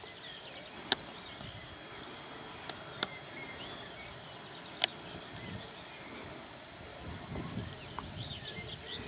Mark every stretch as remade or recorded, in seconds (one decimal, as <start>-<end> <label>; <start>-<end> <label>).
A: 0.0-4.9 recorded; 4.9-7.0 remade; 7.0-9.1 recorded